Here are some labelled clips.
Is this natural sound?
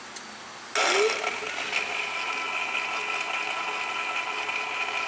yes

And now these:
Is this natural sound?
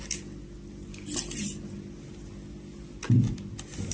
yes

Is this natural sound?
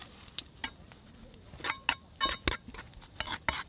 yes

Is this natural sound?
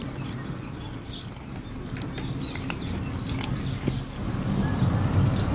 yes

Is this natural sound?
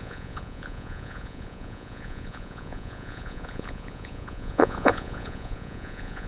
no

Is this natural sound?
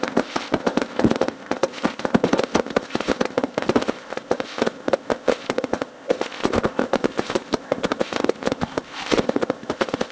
no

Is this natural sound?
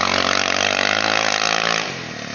yes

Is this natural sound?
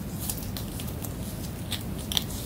yes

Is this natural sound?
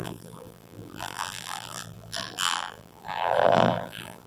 no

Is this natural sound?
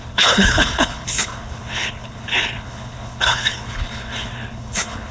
no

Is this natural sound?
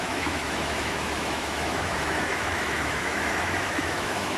no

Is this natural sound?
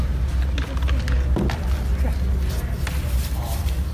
yes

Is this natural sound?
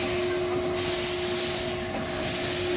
yes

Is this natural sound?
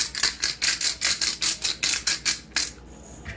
yes